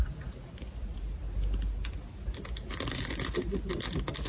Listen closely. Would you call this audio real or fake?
real